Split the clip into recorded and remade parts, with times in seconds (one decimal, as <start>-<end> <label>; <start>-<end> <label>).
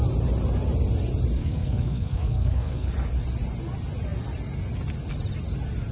0.0-1.4 recorded; 1.4-2.9 remade; 2.9-5.9 recorded